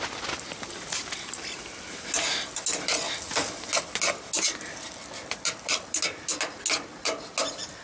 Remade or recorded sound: recorded